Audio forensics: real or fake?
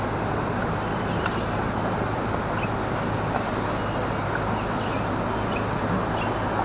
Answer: real